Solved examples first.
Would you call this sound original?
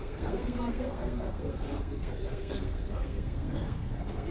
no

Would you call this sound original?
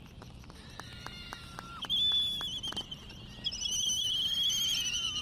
yes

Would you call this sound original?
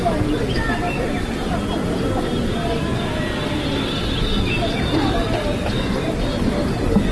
yes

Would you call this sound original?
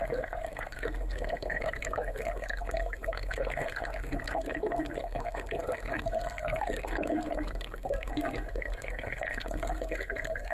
no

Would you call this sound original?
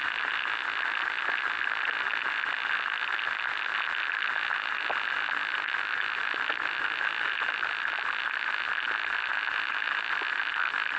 yes